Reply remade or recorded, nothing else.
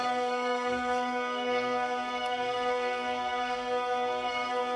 remade